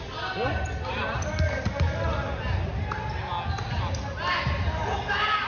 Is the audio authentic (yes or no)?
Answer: yes